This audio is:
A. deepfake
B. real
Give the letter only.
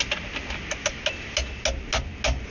B